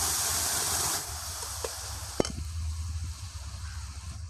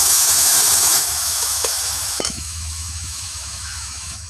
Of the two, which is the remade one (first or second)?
second